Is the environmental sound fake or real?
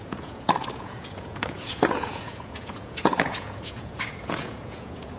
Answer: fake